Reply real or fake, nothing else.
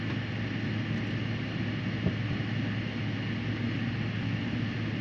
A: real